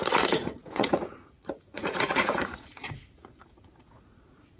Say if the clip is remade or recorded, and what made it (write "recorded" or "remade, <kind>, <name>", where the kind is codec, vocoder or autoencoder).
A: remade, vocoder, Vocos